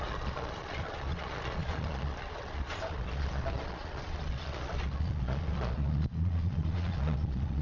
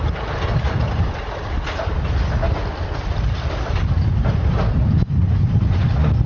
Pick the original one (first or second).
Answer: second